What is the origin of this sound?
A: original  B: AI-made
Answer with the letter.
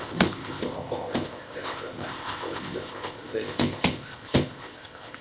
B